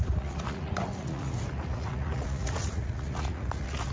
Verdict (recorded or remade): remade